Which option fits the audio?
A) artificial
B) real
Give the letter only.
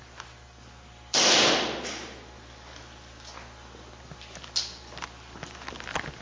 B